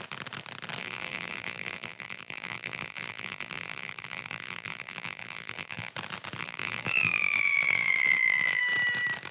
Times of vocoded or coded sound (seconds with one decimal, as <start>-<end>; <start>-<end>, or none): 0.8-5.9; 6.4-8.6